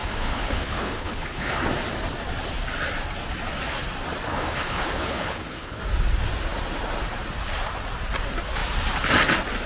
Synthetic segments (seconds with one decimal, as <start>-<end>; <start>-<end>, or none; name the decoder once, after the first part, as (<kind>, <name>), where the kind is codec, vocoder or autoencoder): 0.0-1.6 (codec, HILCodec); 4.3-5.8